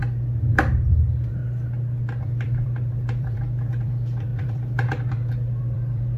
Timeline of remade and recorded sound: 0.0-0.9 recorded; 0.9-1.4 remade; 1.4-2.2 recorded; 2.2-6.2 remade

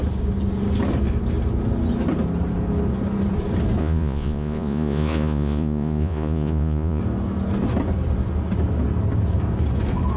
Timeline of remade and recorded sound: 0.0-3.8 recorded; 3.8-7.0 remade; 7.0-10.2 recorded

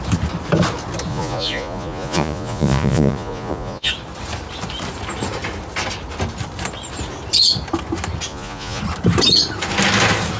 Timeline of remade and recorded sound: 0.0-1.1 recorded; 1.1-3.9 remade; 3.9-8.3 recorded; 8.3-8.8 remade; 8.8-10.4 recorded

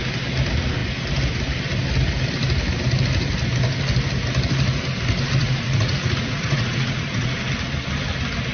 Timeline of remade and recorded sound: 0.0-5.4 recorded; 5.4-7.3 remade; 7.3-8.5 recorded

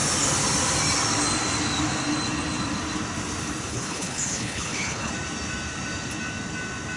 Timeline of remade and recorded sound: 0.0-3.7 recorded; 3.7-5.1 remade; 5.1-7.0 recorded